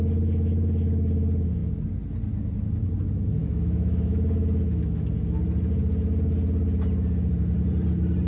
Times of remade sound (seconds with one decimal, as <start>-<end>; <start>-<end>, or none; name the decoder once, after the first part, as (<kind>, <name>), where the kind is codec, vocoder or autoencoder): 3.4-5.0 (autoencoder, DAC-VAE)